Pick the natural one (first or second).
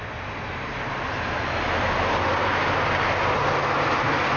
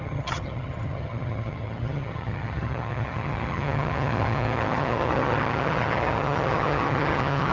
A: first